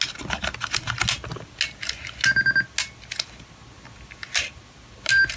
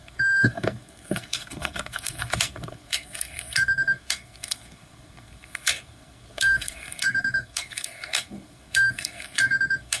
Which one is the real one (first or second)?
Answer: first